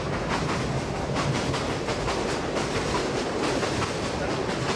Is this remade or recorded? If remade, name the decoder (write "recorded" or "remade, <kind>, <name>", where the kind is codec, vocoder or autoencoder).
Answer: recorded